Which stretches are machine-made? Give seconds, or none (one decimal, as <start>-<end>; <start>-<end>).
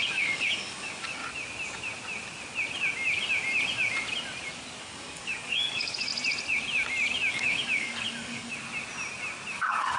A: 0.0-1.2; 4.8-6.1; 7.3-8.5; 9.5-10.0